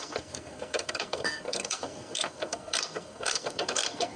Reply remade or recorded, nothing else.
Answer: remade